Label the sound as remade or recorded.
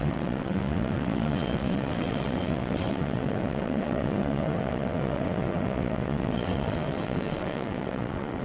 remade